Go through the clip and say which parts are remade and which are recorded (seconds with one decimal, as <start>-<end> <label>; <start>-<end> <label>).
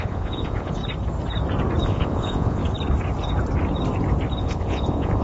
0.0-0.8 remade; 0.8-1.8 recorded; 1.8-2.6 remade; 2.6-4.4 recorded; 4.4-5.2 remade